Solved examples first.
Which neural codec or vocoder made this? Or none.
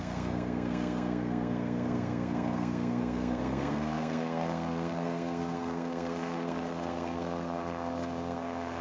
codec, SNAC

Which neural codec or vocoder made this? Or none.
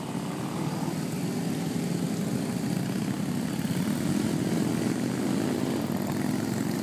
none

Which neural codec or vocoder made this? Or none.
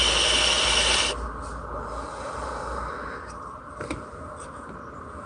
none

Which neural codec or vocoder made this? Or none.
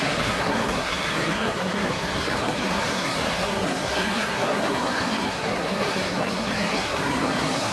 codec, SNAC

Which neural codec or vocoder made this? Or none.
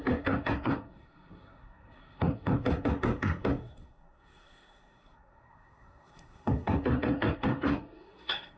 codec, SNAC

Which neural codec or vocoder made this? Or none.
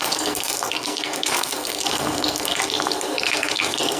codec, SNAC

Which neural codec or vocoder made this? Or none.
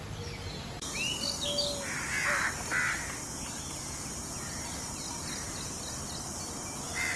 none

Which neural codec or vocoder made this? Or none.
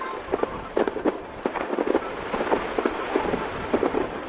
none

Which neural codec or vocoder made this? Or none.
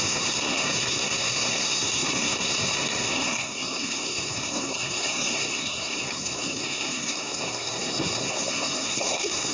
codec, SNAC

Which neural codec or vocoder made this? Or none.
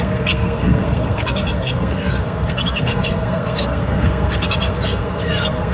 codec, SNAC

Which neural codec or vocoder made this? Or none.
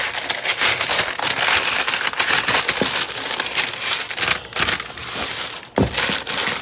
none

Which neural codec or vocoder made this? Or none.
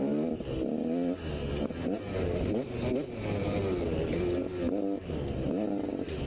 none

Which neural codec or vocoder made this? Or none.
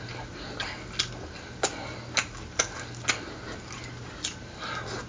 none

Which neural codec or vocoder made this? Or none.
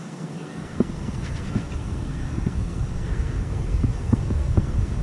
codec, SNAC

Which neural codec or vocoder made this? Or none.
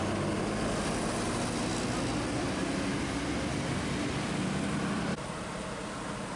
none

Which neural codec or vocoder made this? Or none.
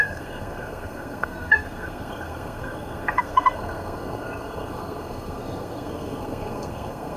codec, SNAC